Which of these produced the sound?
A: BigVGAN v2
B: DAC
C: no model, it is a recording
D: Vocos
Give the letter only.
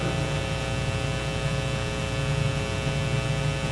C